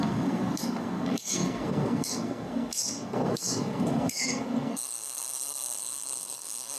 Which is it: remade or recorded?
remade